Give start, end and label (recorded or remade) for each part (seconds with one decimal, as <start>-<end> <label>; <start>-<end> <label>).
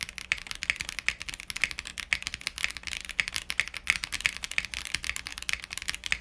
0.0-6.2 recorded